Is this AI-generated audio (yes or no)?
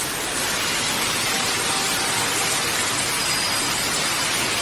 no